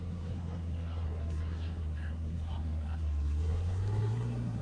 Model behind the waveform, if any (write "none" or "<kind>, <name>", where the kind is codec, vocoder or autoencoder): codec, SNAC